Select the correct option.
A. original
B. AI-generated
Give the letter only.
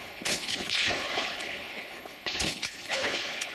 B